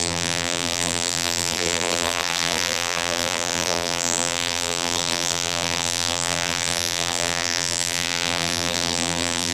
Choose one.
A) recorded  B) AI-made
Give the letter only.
B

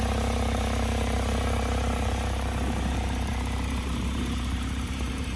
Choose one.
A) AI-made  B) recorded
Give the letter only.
A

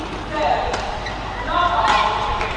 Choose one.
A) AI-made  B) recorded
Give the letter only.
A